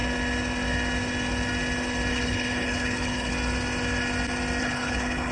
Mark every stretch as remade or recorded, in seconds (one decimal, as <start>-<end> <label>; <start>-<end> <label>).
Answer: 0.0-2.1 recorded; 2.1-3.3 remade; 3.3-4.6 recorded; 4.6-5.3 remade